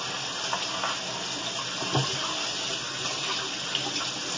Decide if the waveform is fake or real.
real